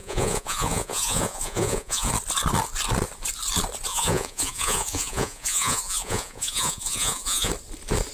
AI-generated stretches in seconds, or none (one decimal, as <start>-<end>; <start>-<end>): 0.0-2.1; 3.9-7.5